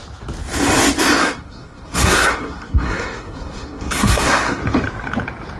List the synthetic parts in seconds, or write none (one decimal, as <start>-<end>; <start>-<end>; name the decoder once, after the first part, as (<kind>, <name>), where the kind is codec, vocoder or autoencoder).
1.2-4.6 (codec, SNAC)